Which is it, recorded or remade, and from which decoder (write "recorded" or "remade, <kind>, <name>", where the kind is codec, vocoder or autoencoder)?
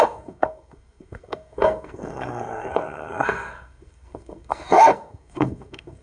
remade, codec, SNAC